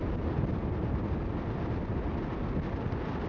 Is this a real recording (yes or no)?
yes